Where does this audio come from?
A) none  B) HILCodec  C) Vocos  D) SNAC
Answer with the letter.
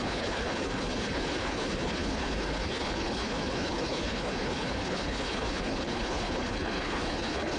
B